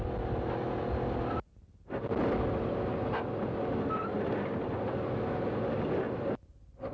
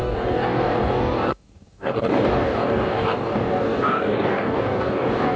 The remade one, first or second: second